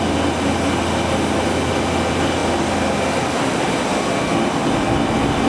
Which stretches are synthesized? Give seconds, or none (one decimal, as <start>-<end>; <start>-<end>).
none